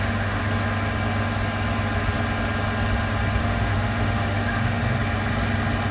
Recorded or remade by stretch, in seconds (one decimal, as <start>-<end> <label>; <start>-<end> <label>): 0.0-0.4 remade; 0.4-3.4 recorded; 3.4-4.8 remade; 4.8-5.9 recorded